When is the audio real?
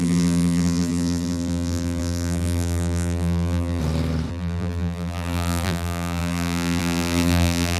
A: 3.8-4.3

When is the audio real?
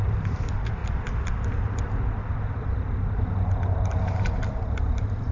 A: 0.8-2.6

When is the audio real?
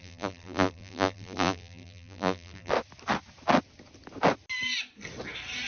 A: 2.7-5.7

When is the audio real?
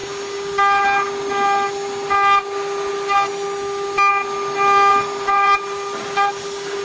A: 0.0-4.9; 6.3-6.8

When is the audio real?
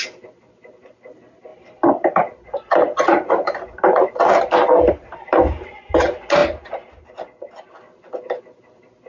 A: 0.0-1.5; 5.8-9.1